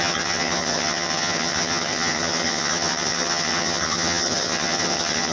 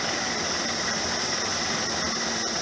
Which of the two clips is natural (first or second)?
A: second